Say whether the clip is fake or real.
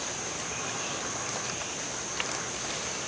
real